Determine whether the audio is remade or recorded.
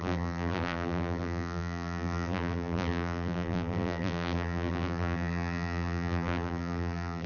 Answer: remade